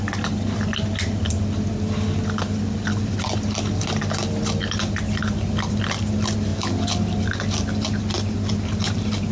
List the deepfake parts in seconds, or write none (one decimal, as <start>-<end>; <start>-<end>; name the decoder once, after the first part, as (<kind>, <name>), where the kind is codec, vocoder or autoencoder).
none